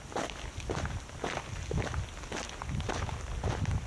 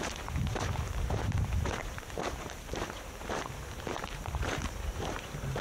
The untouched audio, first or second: first